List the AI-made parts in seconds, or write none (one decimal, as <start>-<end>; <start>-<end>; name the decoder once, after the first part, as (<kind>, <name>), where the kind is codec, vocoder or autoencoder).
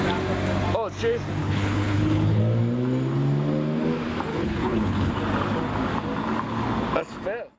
1.4-2.4 (codec, HILCodec); 4.3-5.1